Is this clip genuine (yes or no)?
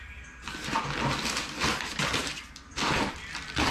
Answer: yes